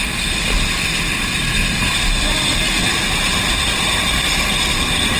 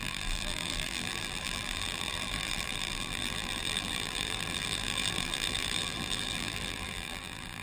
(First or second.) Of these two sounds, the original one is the first